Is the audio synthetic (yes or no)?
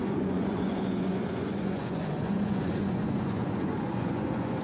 yes